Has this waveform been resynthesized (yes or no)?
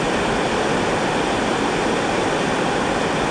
yes